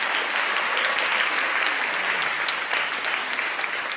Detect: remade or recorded recorded